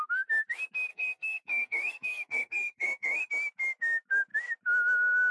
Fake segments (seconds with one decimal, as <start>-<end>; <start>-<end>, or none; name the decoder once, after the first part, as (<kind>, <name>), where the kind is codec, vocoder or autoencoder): 0.9-3.3 (codec, SNAC)